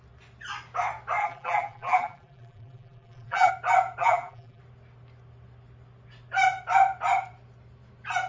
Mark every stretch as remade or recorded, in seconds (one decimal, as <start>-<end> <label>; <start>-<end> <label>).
0.0-1.2 recorded; 1.2-3.5 remade; 3.5-4.0 recorded; 4.0-4.6 remade; 4.6-8.3 recorded

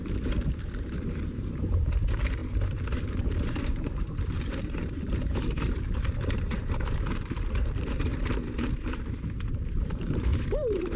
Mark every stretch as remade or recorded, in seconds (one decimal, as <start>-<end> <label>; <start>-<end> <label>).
0.0-11.0 remade

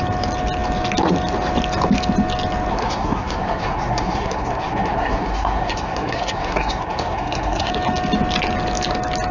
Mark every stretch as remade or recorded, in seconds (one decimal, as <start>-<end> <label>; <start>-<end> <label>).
0.0-2.7 recorded; 2.7-7.7 remade; 7.7-9.3 recorded

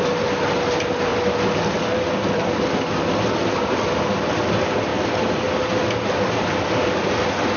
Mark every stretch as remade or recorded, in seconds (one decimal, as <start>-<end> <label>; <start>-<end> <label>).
0.0-7.6 recorded